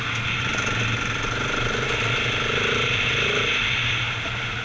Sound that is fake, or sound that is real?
real